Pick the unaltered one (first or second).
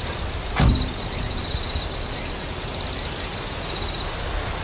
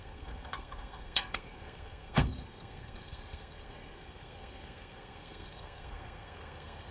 first